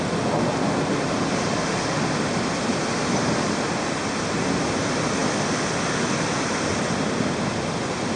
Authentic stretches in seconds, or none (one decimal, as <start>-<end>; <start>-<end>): 0.0-8.2